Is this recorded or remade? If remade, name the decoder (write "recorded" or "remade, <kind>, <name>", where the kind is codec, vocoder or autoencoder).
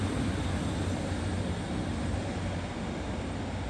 recorded